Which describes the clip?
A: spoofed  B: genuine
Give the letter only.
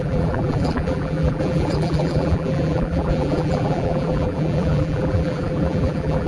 A